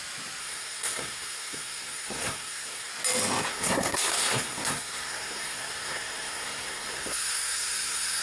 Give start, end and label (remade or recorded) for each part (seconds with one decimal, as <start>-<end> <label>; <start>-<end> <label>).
0.0-0.4 recorded; 0.4-2.9 remade; 2.9-3.5 recorded; 3.5-8.2 remade